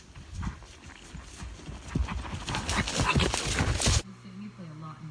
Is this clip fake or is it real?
real